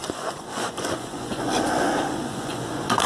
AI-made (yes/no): yes